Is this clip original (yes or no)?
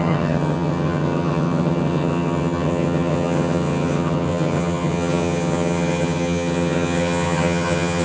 no